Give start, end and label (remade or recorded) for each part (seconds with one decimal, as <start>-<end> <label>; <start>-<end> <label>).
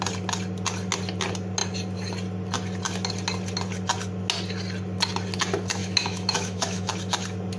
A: 0.0-5.8 recorded; 5.8-6.9 remade; 6.9-7.6 recorded